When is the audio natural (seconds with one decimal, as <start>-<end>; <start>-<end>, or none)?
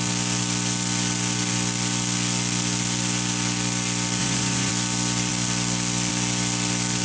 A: 0.0-4.2; 4.7-7.0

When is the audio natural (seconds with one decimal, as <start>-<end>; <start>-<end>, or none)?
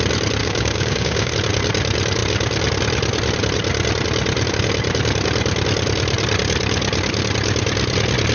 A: 0.0-0.4; 1.3-8.3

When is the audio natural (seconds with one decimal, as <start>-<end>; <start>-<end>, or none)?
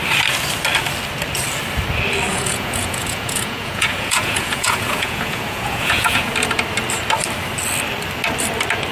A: 0.0-2.3; 6.3-8.9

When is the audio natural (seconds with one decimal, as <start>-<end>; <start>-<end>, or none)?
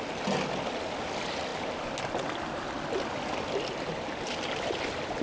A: 0.0-5.2